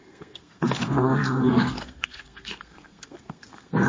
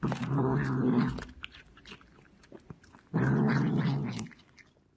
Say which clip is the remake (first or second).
first